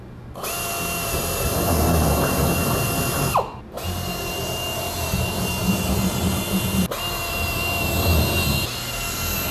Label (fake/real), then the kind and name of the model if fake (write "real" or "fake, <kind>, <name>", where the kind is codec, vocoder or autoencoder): real